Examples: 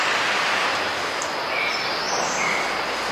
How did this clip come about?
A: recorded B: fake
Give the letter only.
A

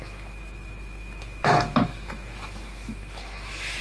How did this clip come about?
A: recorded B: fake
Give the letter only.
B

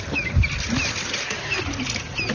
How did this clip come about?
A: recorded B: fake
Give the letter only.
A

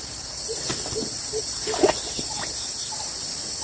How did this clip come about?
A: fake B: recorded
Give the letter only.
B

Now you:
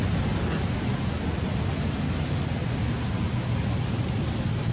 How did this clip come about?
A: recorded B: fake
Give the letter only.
A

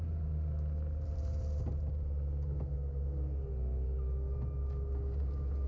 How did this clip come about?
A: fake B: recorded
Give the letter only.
B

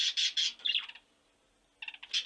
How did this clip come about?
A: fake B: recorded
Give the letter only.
B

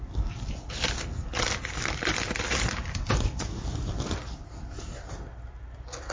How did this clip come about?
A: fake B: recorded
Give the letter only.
A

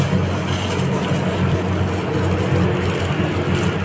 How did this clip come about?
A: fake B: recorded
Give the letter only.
B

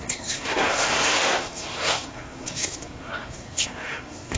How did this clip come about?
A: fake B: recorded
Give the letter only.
A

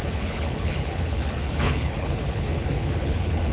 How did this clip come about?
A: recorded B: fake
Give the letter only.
B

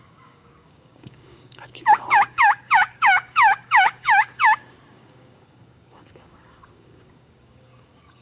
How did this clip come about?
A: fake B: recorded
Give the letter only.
A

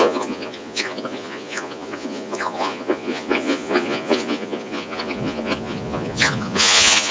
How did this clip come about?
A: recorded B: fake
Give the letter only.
B